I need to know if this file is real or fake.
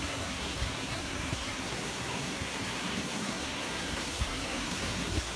fake